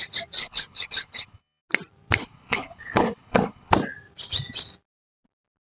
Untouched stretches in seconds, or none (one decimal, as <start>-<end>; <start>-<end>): 0.0-0.4; 1.6-2.2; 3.7-5.7